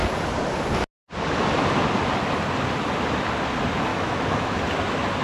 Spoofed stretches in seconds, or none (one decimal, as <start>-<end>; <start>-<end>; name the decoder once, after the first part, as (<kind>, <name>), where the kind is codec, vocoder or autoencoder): 3.9-4.6 (autoencoder, DAC-VAE)